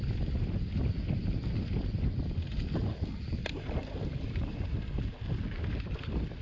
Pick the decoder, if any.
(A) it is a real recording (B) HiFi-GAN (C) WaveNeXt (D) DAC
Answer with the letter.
A